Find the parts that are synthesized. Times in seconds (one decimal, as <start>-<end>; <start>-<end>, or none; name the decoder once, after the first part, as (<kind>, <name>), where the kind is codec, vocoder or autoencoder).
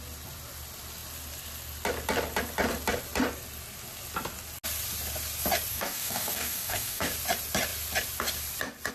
5.7-7.1 (codec, DAC)